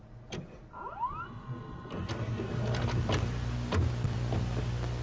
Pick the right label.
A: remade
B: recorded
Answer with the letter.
B